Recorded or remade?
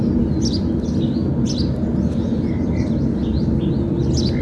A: recorded